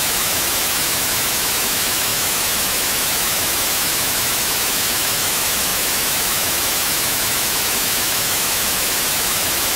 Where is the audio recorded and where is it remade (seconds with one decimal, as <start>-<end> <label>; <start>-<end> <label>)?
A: 0.0-9.8 remade